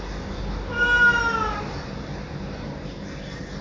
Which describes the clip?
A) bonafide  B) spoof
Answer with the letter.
A